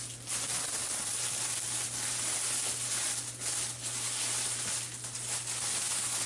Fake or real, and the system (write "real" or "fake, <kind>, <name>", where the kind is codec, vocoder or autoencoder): real